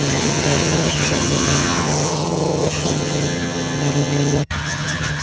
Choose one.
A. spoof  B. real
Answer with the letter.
A